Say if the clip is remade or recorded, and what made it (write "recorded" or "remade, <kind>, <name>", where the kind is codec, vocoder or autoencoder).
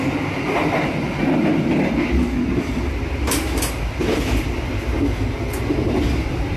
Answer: recorded